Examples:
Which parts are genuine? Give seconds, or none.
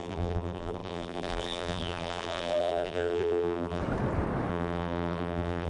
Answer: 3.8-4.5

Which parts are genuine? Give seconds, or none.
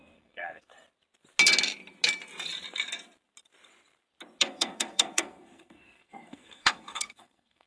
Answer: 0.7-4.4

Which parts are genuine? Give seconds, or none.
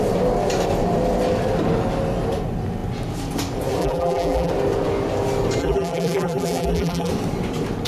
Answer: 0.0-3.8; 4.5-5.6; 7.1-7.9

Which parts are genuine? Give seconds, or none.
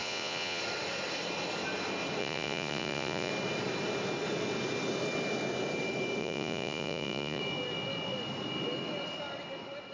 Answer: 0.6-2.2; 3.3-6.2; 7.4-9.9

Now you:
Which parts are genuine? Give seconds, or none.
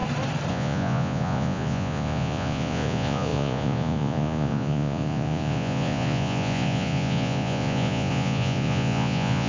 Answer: 0.0-0.5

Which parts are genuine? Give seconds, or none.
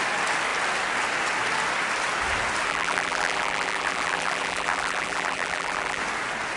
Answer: 0.0-2.7; 6.0-6.6